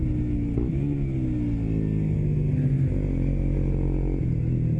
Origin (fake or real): real